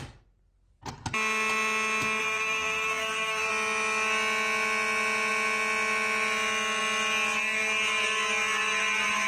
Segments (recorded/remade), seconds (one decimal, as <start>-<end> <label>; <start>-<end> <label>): 0.0-2.2 recorded; 2.2-3.5 remade; 3.5-9.3 recorded